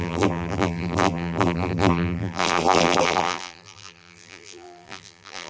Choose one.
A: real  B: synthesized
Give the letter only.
B